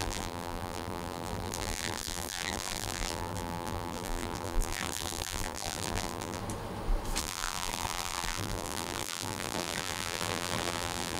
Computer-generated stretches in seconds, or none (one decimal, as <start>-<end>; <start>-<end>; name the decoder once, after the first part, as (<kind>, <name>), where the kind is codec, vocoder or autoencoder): 0.0-6.4 (vocoder, BigVGAN v2); 7.2-11.2